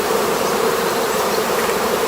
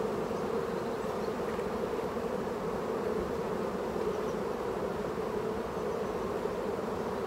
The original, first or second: second